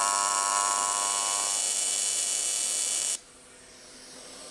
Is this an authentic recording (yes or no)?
no